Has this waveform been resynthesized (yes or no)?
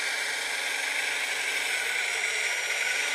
no